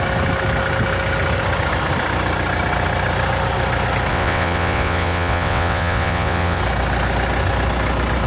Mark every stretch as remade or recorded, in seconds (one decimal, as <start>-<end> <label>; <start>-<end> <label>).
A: 0.0-4.1 recorded; 4.1-6.6 remade; 6.6-8.3 recorded